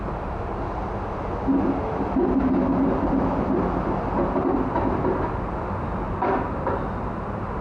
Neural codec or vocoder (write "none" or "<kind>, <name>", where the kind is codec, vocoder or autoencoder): none